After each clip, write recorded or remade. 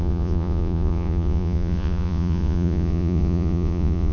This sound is remade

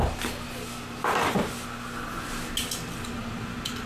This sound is recorded